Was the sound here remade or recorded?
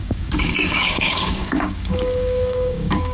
remade